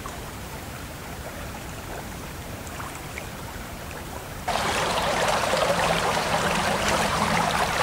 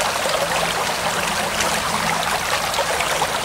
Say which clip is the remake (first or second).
first